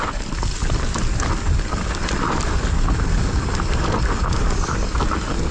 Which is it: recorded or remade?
recorded